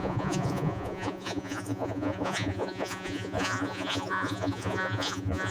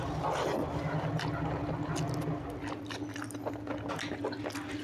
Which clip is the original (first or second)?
second